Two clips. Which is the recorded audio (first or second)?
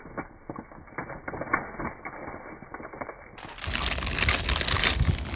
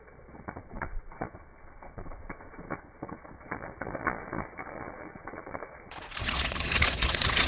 first